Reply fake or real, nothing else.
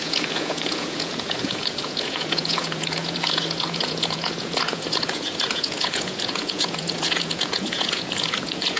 fake